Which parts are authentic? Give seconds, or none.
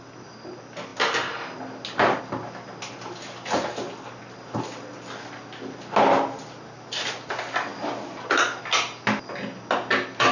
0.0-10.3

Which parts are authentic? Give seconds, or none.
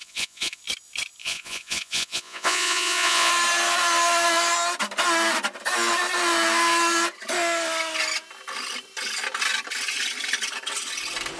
0.6-1.2; 3.3-11.4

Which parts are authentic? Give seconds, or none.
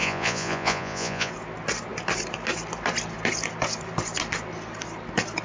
1.3-5.4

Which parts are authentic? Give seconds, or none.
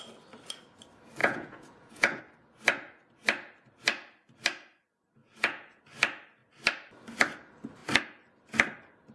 0.0-1.2; 2.2-5.2; 5.8-9.1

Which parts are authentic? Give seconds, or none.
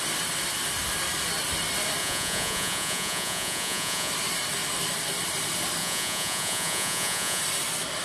0.0-2.0; 4.1-5.8; 7.4-8.0